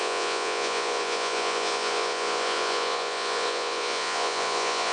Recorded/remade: remade